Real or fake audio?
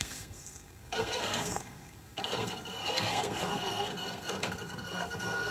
fake